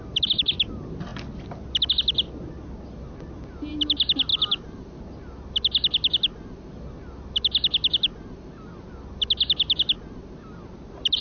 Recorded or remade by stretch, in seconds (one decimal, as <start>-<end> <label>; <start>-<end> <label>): 0.0-4.3 recorded; 4.3-5.0 remade; 5.0-11.2 recorded